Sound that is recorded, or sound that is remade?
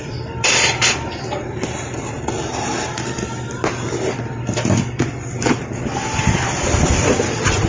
recorded